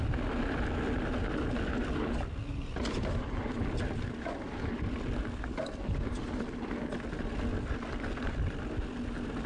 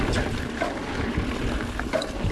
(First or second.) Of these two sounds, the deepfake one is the second